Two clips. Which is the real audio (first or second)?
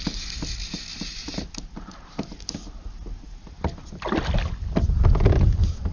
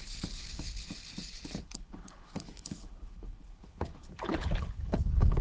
first